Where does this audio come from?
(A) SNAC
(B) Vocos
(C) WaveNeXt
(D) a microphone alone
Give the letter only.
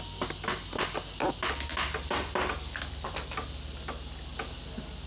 D